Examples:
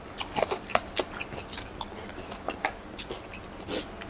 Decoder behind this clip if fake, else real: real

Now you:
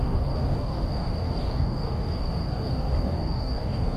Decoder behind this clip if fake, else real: fake, codec, DAC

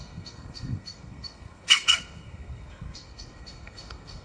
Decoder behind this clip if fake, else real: fake, codec, SNAC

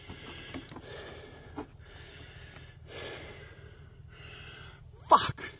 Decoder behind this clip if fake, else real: real